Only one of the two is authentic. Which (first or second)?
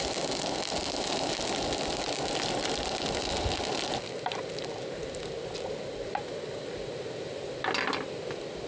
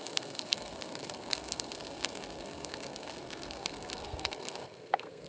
first